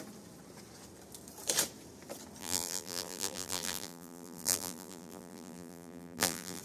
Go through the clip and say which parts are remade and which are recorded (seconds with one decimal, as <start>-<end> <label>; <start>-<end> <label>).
0.0-2.4 recorded; 2.4-6.6 remade

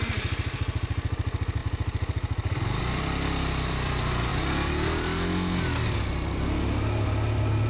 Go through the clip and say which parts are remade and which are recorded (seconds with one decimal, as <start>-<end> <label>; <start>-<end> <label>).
0.0-4.3 remade; 4.3-7.7 recorded

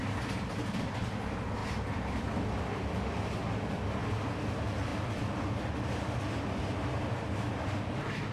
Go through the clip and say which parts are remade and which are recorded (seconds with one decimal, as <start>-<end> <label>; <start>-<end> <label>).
0.0-8.3 recorded

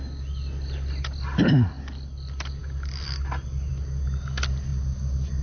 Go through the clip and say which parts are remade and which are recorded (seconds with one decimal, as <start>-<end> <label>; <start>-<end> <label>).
0.0-5.4 recorded

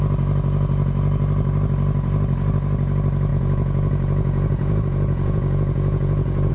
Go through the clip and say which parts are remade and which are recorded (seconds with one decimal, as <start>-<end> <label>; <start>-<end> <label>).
0.0-3.3 recorded; 3.3-6.5 remade

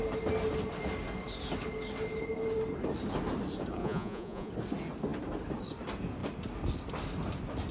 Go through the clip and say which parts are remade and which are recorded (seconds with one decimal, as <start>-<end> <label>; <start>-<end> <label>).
0.0-3.8 recorded; 3.8-4.5 remade; 4.5-7.7 recorded

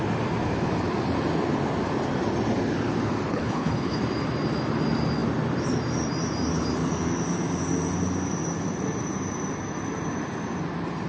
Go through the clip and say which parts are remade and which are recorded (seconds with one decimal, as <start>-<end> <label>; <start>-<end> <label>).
0.0-3.3 recorded; 3.3-4.0 remade; 4.0-11.1 recorded

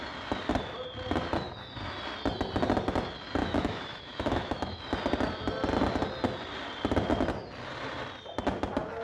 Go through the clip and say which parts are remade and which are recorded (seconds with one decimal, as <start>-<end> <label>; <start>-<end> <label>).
0.0-3.4 recorded; 3.4-4.8 remade; 4.8-9.0 recorded